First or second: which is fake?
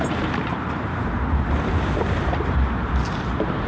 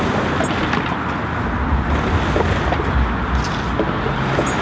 first